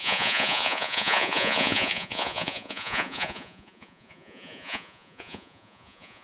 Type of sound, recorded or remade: remade